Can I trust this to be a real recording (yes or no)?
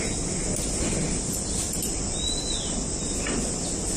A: yes